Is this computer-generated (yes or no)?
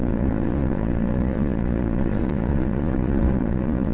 yes